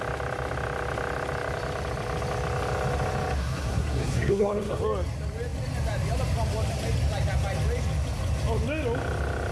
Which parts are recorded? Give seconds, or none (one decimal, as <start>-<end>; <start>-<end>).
0.0-3.4; 4.8-9.5